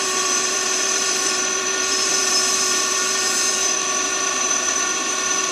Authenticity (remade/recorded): remade